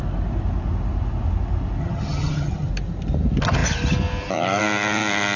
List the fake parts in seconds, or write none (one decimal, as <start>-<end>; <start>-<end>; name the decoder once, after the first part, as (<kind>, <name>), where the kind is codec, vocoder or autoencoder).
1.8-2.7 (vocoder, HiFi-GAN)